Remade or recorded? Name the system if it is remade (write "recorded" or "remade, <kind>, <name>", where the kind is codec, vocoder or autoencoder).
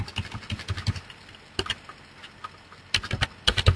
recorded